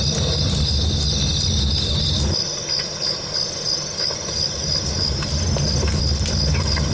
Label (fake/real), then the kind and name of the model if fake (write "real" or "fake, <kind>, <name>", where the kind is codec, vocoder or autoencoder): real